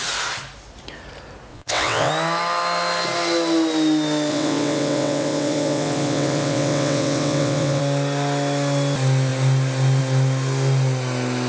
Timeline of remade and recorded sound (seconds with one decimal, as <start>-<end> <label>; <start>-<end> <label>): 0.0-1.5 recorded; 1.5-2.1 remade; 2.1-4.3 recorded; 4.3-7.8 remade; 7.8-11.5 recorded